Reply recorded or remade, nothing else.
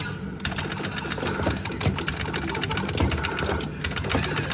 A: recorded